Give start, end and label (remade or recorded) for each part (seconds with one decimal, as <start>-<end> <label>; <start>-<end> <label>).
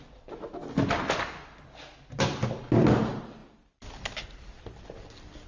0.0-5.5 recorded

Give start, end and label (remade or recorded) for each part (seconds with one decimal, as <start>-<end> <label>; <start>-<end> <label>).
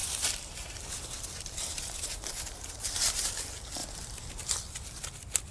0.0-3.3 remade; 3.3-3.8 recorded; 3.8-4.5 remade; 4.5-5.5 recorded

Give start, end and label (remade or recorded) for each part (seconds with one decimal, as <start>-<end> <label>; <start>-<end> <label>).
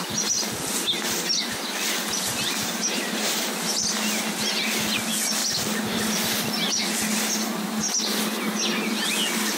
0.0-2.6 recorded; 2.6-3.4 remade; 3.4-9.6 recorded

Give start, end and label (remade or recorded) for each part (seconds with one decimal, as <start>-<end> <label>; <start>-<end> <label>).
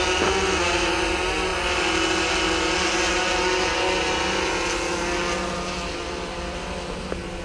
0.0-7.4 recorded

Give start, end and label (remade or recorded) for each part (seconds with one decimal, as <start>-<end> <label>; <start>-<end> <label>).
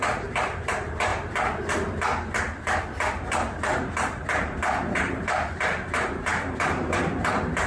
0.0-1.1 remade; 1.1-3.1 recorded; 3.1-7.7 remade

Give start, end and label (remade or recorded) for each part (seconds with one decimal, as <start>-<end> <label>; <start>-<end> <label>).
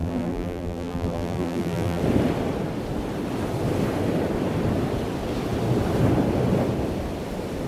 0.0-2.0 remade; 2.0-7.7 recorded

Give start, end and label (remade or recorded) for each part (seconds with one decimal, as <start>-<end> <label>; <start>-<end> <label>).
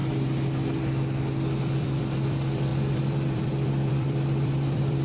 0.0-1.6 recorded; 1.6-5.0 remade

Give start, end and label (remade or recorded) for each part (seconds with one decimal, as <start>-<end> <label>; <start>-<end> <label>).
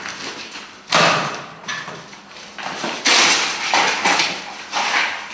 0.0-5.3 remade